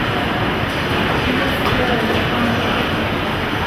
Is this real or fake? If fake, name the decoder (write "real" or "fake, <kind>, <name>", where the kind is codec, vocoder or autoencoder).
real